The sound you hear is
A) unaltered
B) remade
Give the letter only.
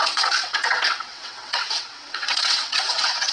B